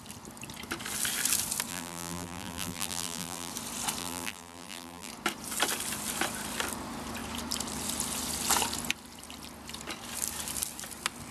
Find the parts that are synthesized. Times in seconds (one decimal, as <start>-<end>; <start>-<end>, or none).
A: 1.7-3.5; 4.0-5.1